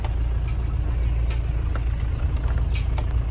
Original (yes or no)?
yes